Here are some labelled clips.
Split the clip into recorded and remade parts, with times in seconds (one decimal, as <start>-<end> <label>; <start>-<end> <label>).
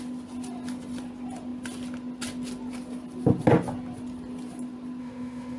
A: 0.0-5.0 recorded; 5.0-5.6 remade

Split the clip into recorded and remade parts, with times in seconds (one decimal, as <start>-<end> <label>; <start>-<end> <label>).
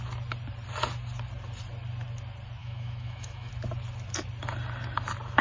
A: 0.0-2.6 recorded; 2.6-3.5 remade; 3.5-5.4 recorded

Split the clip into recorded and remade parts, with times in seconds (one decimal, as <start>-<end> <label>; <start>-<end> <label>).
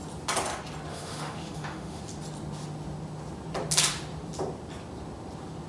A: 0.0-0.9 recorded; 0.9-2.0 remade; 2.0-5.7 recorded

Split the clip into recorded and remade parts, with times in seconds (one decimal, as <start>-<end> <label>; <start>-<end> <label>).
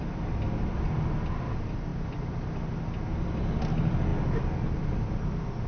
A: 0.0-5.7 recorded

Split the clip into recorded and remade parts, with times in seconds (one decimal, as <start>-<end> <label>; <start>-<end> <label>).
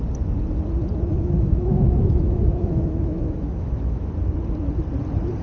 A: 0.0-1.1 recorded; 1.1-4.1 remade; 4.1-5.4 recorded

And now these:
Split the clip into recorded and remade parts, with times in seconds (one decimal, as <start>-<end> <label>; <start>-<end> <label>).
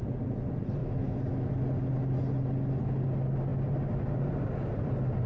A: 0.0-0.8 recorded; 0.8-1.5 remade; 1.5-5.3 recorded